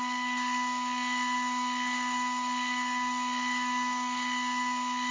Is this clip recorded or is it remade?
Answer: remade